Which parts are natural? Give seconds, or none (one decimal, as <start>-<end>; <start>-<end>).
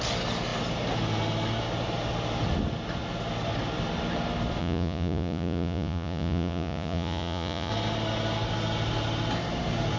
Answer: 0.0-4.6; 7.7-10.0